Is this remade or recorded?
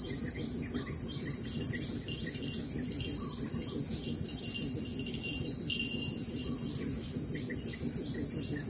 recorded